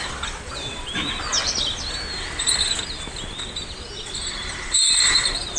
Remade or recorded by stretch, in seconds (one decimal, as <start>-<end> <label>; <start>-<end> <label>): 0.0-1.3 remade; 1.3-4.7 recorded; 4.7-5.6 remade

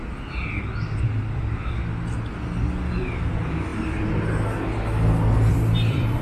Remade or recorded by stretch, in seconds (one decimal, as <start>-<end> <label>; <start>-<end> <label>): 0.0-3.3 recorded; 3.3-3.7 remade; 3.7-5.5 recorded; 5.5-6.2 remade

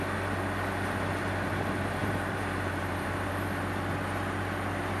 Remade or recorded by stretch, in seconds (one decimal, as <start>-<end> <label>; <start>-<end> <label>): 0.0-2.0 recorded; 2.0-3.3 remade; 3.3-5.0 recorded

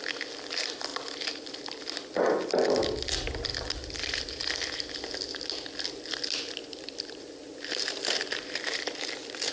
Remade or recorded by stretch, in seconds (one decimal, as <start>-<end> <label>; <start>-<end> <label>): 0.0-0.9 recorded; 0.9-1.8 remade; 1.8-3.5 recorded; 3.5-4.9 remade; 4.9-6.6 recorded; 6.6-8.0 remade; 8.0-9.5 recorded

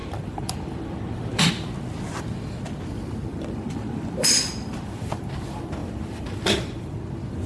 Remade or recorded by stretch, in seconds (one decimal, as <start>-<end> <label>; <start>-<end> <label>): 0.0-1.5 remade; 1.5-3.3 recorded; 3.3-5.1 remade; 5.1-5.8 recorded; 5.8-7.0 remade; 7.0-7.5 recorded

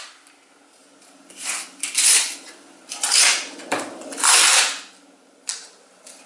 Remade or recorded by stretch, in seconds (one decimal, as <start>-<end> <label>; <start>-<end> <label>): 0.0-0.8 recorded; 0.8-4.4 remade; 4.4-6.3 recorded

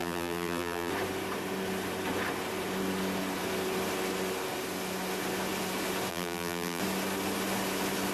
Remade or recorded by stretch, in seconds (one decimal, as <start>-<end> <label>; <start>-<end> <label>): 0.0-0.9 remade; 0.9-6.1 recorded; 6.1-6.8 remade; 6.8-8.1 recorded